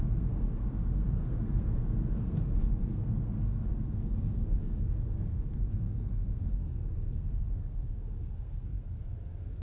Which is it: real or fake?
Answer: fake